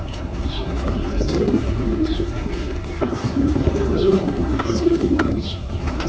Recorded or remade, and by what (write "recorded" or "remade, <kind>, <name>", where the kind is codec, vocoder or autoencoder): remade, codec, SNAC